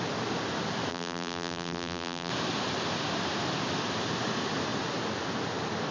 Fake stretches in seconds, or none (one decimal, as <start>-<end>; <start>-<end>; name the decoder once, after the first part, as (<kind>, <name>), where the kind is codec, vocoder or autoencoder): 0.9-2.3 (vocoder, BigVGAN v2)